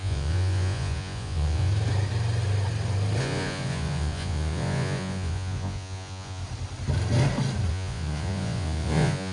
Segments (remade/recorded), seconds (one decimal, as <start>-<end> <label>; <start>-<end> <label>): 0.0-1.7 remade; 1.7-3.2 recorded; 3.2-6.4 remade; 6.4-7.7 recorded; 7.7-9.3 remade